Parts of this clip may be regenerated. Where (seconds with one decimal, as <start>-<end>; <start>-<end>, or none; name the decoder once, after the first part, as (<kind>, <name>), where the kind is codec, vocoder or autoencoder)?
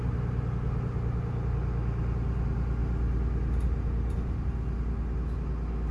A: none